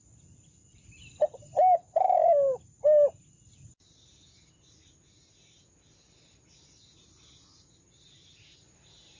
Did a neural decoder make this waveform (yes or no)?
no